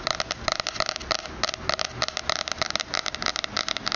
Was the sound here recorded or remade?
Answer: recorded